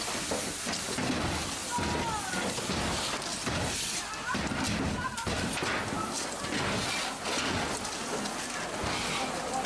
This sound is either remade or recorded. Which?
recorded